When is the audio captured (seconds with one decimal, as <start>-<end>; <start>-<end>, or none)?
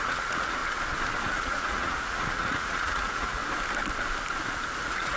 0.6-1.3; 3.4-4.8